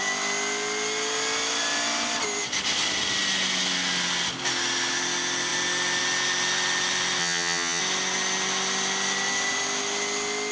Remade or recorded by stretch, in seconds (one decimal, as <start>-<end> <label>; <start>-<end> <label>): 0.0-7.2 recorded; 7.2-7.8 remade; 7.8-10.5 recorded

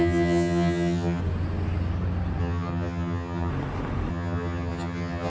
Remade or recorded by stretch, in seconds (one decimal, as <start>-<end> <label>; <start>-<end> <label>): 0.0-1.2 remade; 1.2-2.4 recorded; 2.4-3.5 remade; 3.5-4.1 recorded; 4.1-5.3 remade